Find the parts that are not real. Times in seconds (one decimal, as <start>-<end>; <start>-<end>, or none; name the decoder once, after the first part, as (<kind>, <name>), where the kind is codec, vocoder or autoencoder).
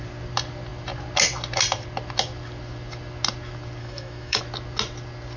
3.8-4.4 (autoencoder, DAC-VAE)